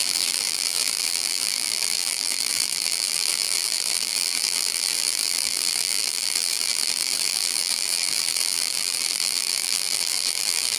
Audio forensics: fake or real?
fake